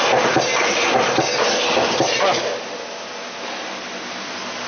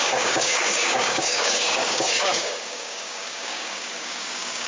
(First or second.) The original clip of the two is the first